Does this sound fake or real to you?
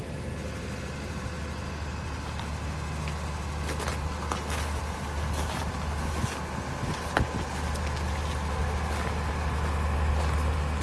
real